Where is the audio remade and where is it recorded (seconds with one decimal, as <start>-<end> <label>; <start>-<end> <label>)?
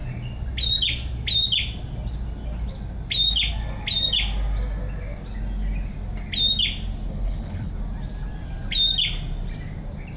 0.0-7.1 recorded; 7.1-7.7 remade; 7.7-10.2 recorded